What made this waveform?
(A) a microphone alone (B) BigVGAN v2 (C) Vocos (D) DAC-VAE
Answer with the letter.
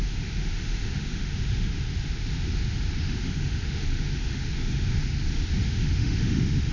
D